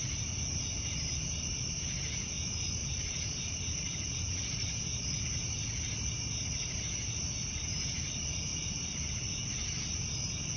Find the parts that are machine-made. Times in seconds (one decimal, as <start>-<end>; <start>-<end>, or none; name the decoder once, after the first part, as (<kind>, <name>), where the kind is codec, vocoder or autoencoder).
2.8-5.2 (vocoder, BigVGAN v2); 8.5-9.1